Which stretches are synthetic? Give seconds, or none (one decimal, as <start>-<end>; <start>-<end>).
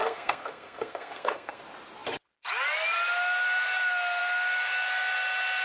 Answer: 0.0-1.6